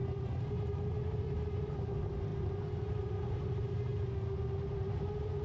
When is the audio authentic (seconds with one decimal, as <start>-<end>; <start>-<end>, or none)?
0.0-0.9; 3.9-4.8